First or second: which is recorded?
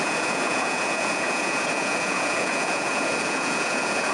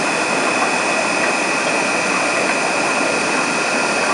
second